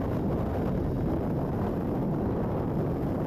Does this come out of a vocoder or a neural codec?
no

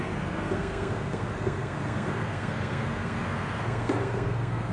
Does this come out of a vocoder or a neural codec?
yes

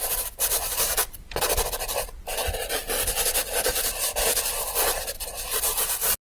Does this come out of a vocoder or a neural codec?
no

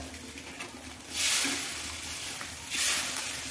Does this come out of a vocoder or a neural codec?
no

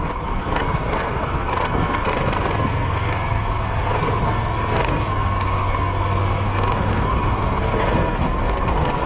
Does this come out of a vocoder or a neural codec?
yes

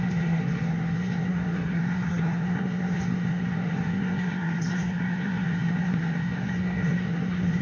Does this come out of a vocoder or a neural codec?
yes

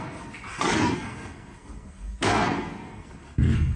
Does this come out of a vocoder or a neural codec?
yes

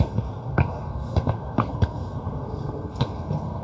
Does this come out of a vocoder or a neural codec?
yes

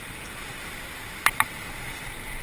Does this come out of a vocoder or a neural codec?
no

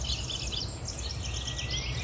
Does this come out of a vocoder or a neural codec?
no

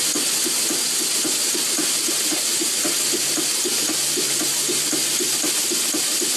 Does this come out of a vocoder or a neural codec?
no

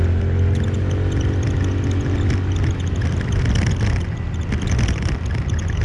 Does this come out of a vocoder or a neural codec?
no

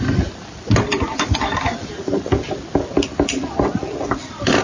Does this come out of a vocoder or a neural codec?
no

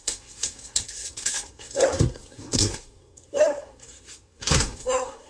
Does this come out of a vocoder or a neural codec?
yes